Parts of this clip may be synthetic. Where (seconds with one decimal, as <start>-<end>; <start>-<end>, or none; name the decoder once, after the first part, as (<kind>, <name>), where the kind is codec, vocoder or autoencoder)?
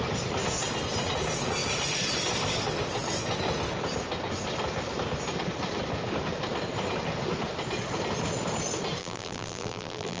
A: 9.0-10.2 (vocoder, BigVGAN v2)